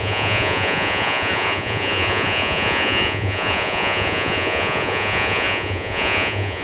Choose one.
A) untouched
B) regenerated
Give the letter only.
B